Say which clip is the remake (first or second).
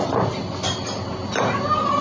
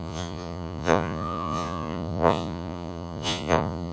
second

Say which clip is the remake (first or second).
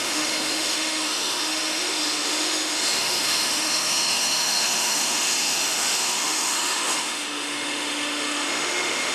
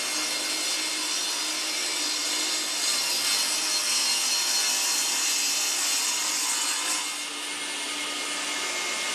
first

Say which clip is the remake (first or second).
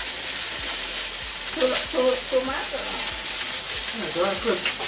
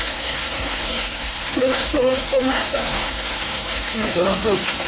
second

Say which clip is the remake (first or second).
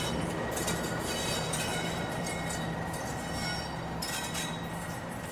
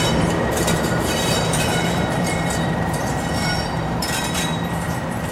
second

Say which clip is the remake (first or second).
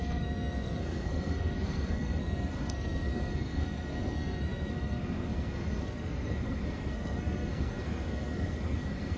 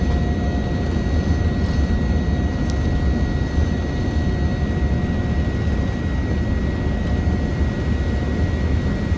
first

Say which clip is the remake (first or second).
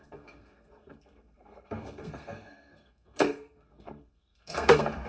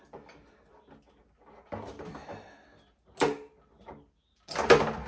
first